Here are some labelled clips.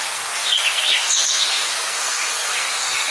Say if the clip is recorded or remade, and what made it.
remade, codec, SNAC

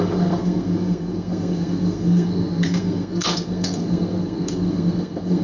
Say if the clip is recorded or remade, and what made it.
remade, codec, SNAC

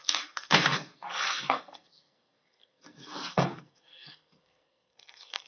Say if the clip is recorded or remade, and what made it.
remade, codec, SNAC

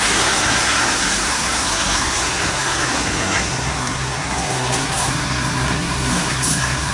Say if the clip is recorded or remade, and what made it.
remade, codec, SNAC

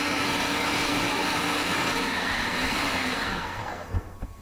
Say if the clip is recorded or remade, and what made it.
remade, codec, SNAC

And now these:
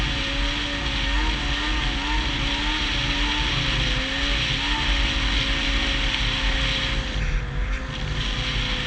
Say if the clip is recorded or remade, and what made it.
recorded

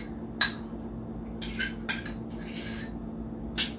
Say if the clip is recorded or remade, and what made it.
recorded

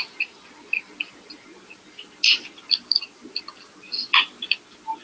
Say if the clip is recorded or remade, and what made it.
recorded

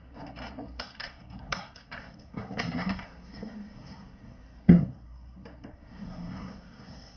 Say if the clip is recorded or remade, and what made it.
remade, codec, SNAC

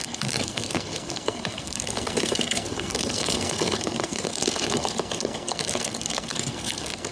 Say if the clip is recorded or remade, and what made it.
remade, codec, SNAC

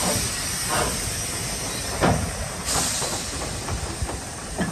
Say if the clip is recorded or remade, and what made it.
recorded